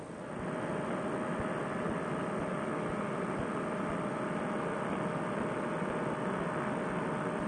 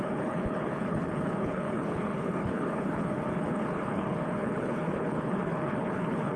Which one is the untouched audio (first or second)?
first